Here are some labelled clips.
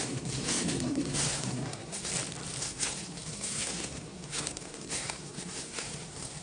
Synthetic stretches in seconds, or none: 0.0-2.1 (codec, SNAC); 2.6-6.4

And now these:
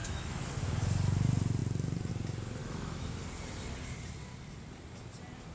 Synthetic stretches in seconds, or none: 0.0-0.5 (autoencoder, DAC-VAE); 2.6-3.2

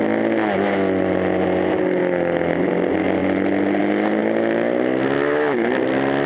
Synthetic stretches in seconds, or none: none

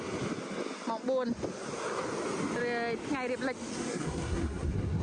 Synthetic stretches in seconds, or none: 3.7-5.0 (codec, SNAC)

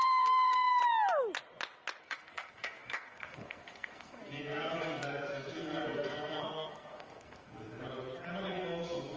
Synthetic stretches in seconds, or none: 0.0-0.8 (codec, SNAC); 2.0-7.8; 8.5-9.2

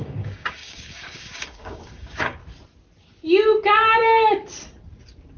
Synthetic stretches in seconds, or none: 0.0-2.4 (codec, DAC)

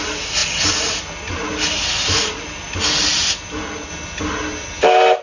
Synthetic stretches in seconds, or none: none